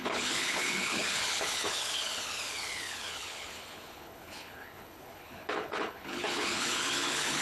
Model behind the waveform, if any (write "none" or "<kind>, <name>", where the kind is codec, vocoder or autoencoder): codec, HILCodec